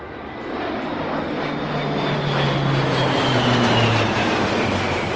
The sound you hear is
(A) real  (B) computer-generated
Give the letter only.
A